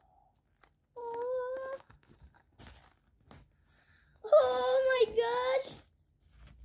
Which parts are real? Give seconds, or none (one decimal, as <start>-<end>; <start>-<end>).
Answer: 0.0-1.0; 2.6-4.1; 5.0-6.6